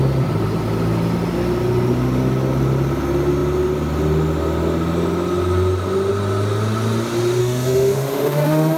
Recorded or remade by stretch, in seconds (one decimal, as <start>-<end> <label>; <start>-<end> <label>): 0.0-7.4 recorded; 7.4-8.8 remade